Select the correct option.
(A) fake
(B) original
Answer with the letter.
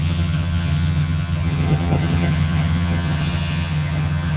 A